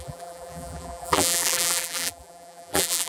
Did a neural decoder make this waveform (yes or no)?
yes